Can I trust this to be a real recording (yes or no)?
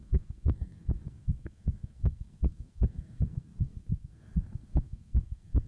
no